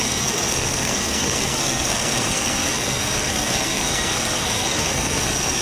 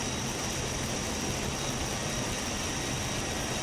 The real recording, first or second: second